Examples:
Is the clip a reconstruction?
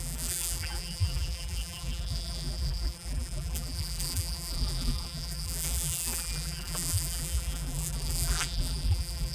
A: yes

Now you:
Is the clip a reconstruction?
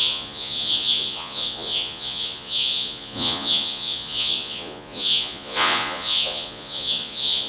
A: yes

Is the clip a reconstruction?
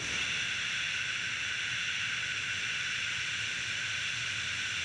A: no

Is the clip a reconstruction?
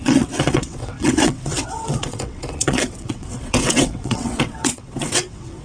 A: yes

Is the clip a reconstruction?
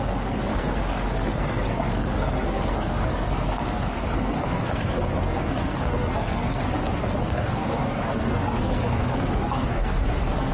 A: yes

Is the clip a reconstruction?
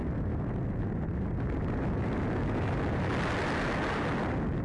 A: no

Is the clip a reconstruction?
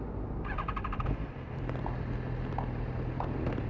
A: no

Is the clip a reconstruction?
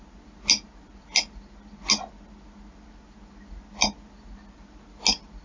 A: no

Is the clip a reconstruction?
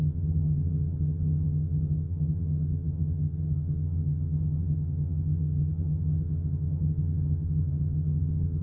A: yes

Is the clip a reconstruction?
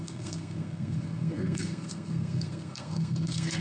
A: yes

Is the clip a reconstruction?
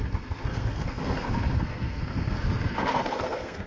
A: yes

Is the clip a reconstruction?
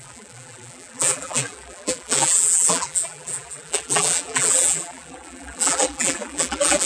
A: yes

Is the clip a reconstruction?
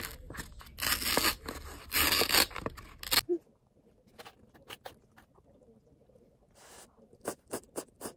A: no